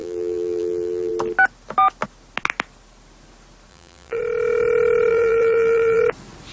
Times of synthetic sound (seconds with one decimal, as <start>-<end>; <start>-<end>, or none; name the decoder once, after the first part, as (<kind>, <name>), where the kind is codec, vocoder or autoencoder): 0.0-1.1 (vocoder, BigVGAN v2); 3.7-4.2; 5.1-6.0